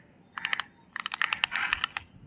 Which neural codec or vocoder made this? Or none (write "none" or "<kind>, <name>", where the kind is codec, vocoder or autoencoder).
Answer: none